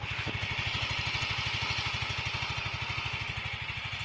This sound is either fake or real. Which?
real